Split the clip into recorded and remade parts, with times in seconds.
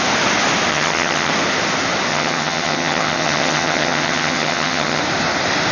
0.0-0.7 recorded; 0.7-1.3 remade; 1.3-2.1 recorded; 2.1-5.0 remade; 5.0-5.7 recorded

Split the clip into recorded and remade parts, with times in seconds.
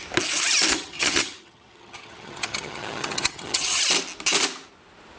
0.0-0.7 recorded; 0.7-3.8 remade; 3.8-5.2 recorded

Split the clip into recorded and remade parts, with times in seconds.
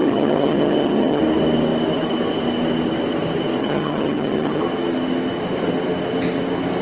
0.0-1.2 remade; 1.2-3.6 recorded; 3.6-4.6 remade; 4.6-6.8 recorded